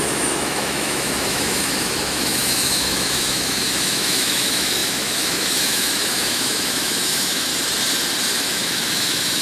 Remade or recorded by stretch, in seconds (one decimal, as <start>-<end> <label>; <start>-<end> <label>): 0.0-7.5 remade; 7.5-8.3 recorded; 8.3-9.4 remade